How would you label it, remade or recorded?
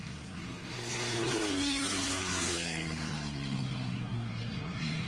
remade